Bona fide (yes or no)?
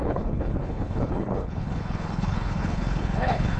no